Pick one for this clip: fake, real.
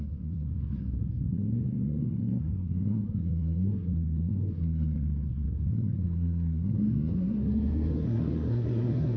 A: fake